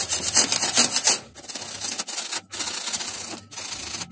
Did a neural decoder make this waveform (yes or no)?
no